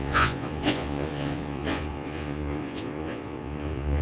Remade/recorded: remade